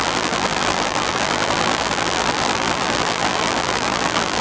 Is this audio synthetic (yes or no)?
yes